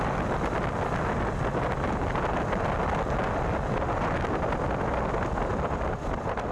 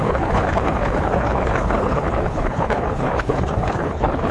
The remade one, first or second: second